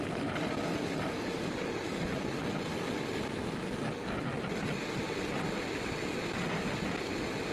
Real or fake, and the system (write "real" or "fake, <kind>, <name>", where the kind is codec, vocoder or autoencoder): real